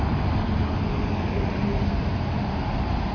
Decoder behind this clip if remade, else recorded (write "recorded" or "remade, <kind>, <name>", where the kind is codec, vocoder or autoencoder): recorded